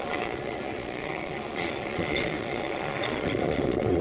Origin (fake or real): fake